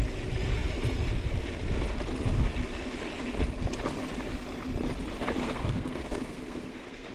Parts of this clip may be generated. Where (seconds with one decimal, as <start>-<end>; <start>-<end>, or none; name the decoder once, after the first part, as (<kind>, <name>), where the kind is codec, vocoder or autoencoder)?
5.4-7.1 (codec, SNAC)

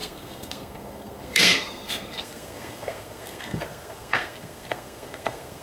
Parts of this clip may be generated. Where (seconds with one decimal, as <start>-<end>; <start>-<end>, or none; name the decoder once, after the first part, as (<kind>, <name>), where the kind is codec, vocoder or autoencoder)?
0.0-5.6 (codec, SNAC)

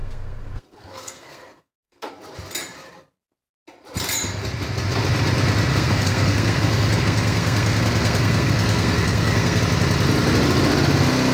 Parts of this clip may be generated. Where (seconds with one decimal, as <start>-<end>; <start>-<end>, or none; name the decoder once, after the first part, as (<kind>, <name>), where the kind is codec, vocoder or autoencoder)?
0.0-2.1 (codec, SNAC); 5.7-9.6

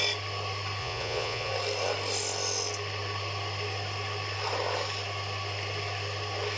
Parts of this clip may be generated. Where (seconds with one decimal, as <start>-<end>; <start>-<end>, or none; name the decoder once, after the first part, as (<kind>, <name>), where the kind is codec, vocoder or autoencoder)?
0.8-1.5 (vocoder, Vocos)

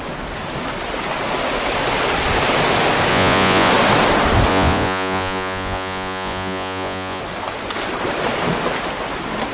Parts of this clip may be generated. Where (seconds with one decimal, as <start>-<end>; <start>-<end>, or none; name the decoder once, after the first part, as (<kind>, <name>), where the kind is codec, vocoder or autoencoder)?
3.1-3.7 (vocoder, Vocos); 4.5-7.2